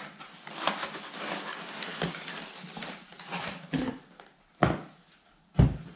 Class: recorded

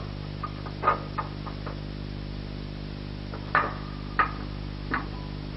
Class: recorded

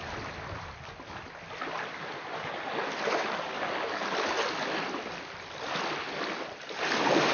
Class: recorded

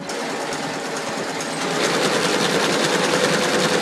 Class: recorded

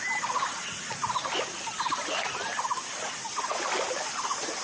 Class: recorded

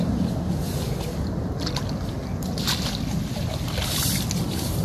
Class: recorded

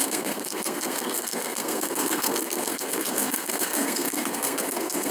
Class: remade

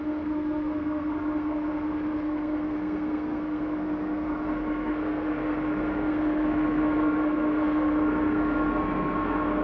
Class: remade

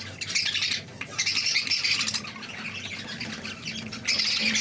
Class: recorded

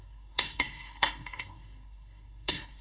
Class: remade